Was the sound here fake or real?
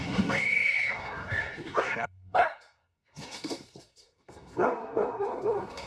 fake